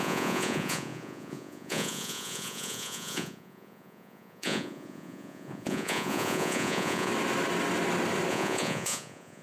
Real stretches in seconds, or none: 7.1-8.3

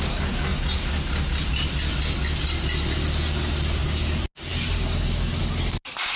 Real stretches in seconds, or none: 0.0-6.2

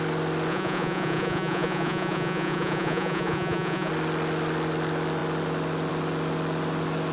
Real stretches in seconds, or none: 0.0-0.5; 3.9-7.1

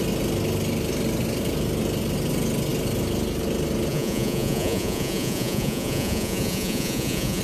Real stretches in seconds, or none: 0.0-3.9

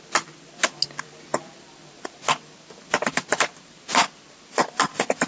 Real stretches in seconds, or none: 0.0-5.3

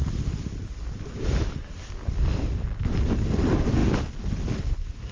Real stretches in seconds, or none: 0.0-5.1

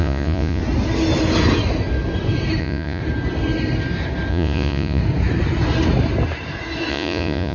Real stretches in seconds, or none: 0.6-2.6; 3.0-4.3; 5.0-6.9

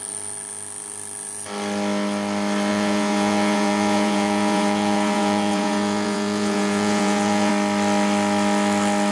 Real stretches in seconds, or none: 0.0-2.7; 7.5-9.1